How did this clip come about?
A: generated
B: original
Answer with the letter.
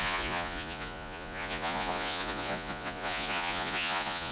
A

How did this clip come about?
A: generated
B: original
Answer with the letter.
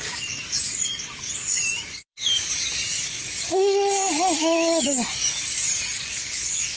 A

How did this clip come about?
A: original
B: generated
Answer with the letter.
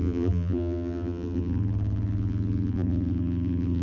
B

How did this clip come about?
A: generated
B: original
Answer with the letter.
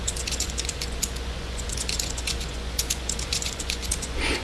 A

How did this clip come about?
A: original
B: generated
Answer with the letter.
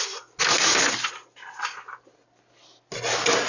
A